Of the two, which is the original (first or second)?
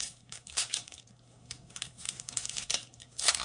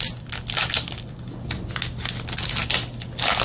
second